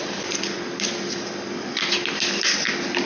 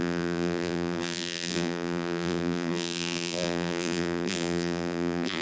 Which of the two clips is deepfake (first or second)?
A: second